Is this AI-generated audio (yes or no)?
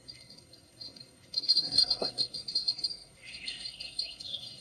yes